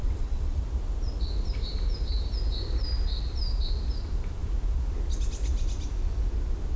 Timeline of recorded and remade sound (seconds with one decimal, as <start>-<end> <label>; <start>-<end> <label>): 0.0-0.6 remade; 0.6-6.8 recorded